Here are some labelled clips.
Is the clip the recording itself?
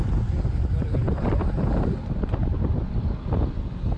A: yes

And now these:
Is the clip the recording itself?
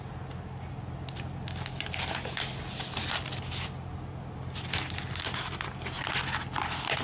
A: yes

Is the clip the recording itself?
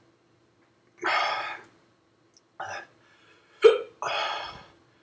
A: yes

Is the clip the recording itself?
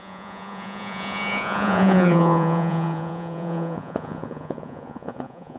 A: no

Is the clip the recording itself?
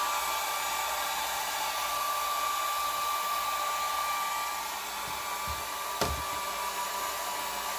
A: yes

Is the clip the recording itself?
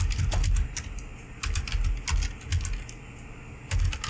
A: yes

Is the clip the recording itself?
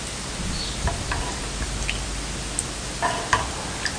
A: yes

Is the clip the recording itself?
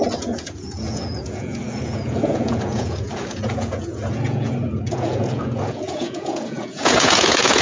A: no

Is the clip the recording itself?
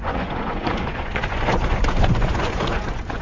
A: no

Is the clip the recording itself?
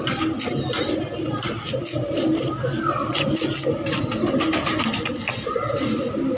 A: yes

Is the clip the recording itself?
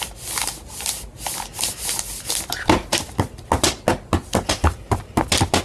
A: yes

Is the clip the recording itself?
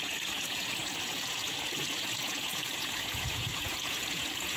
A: no